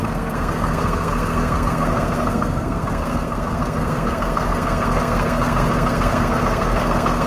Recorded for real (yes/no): no